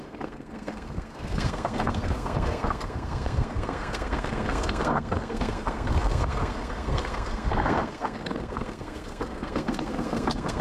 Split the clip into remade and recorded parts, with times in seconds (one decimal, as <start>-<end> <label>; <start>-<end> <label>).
0.0-10.6 remade